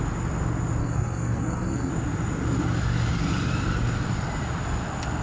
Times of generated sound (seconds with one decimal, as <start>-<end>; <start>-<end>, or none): 0.8-1.9